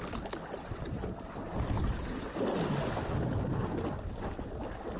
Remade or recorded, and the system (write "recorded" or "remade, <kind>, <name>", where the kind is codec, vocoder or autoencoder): recorded